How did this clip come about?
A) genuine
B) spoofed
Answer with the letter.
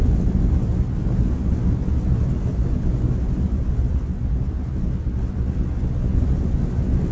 A